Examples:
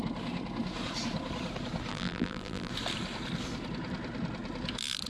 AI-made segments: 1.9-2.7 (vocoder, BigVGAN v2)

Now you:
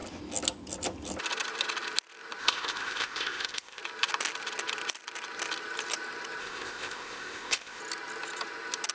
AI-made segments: 2.4-3.8 (codec, ZipCodec); 6.4-7.8

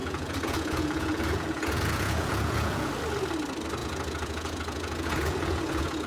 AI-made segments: 0.0-2.9 (vocoder, Vocos); 3.8-6.1